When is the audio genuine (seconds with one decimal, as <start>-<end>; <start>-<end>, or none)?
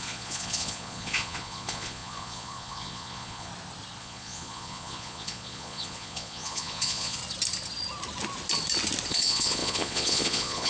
3.5-4.0; 7.2-9.1